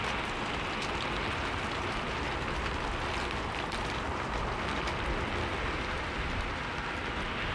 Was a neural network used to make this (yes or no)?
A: no